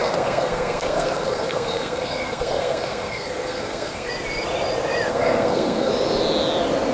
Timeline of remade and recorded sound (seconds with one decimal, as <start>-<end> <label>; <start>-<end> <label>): 0.0-4.1 remade; 4.1-5.1 recorded; 5.1-5.9 remade; 5.9-6.9 recorded